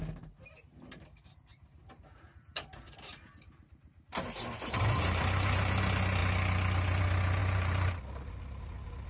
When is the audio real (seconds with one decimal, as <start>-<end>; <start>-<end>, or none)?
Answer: 0.0-1.5; 5.8-7.4; 8.0-9.1